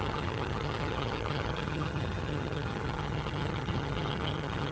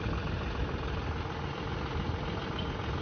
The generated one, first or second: first